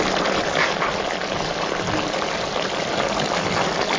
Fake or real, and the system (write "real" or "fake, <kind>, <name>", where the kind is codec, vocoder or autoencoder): fake, vocoder, BigVGAN v2